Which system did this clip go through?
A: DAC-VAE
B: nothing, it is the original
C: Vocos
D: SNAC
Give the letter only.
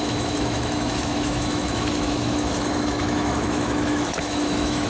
A